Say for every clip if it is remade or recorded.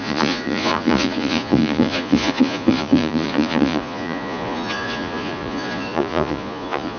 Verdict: remade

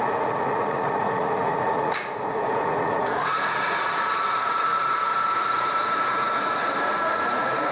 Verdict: remade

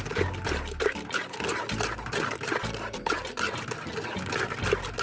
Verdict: recorded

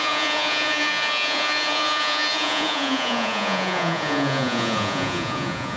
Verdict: remade